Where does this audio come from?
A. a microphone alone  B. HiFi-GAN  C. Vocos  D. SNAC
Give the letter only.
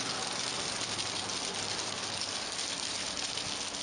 A